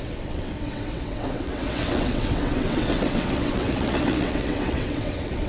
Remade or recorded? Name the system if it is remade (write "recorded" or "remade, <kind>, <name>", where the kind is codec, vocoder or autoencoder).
remade, vocoder, WaveNeXt